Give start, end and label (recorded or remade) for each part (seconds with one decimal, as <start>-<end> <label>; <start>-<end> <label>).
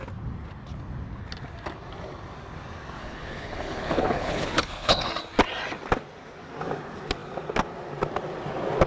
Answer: 0.0-3.0 recorded; 3.0-5.1 remade; 5.1-8.9 recorded